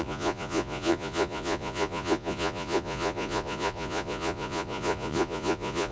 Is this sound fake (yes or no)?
yes